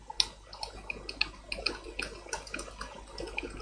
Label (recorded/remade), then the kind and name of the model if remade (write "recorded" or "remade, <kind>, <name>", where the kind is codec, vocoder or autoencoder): recorded